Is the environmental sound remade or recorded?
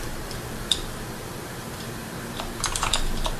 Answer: remade